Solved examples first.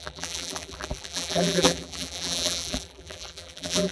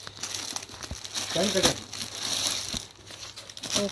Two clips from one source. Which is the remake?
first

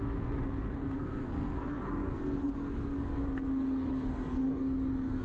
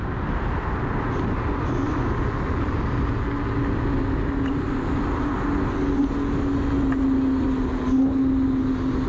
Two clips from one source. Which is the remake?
first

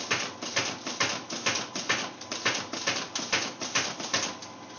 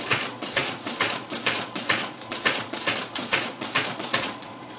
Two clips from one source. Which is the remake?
second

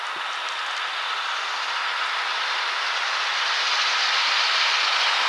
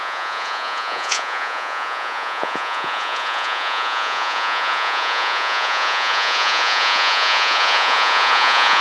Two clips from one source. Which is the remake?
second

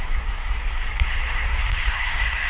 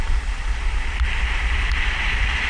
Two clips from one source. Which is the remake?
first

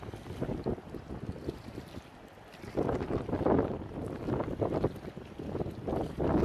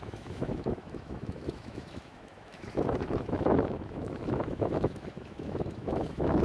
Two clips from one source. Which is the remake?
second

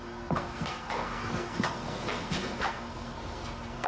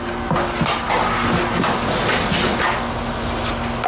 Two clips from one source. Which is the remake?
first